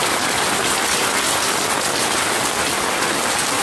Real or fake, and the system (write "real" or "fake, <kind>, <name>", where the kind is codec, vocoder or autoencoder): real